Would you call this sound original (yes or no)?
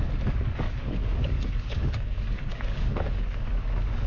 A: no